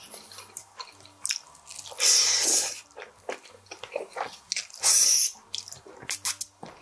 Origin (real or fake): real